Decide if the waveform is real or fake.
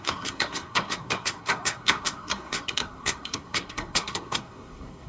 fake